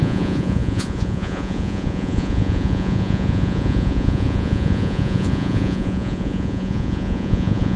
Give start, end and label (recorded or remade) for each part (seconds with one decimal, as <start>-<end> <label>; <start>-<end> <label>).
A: 0.0-7.8 remade